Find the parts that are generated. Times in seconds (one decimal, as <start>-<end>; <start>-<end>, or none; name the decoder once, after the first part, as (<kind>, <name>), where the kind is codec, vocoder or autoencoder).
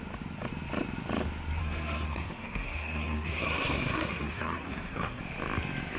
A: 1.6-5.2 (codec, SNAC)